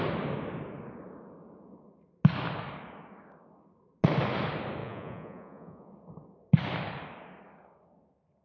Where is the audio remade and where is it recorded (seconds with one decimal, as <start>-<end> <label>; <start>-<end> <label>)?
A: 0.0-4.8 recorded; 4.8-5.9 remade; 5.9-8.4 recorded